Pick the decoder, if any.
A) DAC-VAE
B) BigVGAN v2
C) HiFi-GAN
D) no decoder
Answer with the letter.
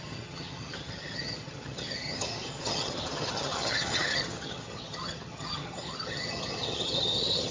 C